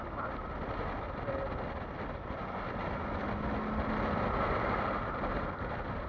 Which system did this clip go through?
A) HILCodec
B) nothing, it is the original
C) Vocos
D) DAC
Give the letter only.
B